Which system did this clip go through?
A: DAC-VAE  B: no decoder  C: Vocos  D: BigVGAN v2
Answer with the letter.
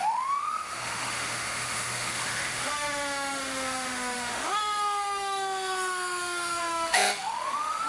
A